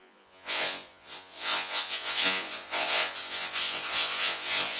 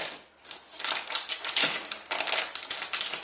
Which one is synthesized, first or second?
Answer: first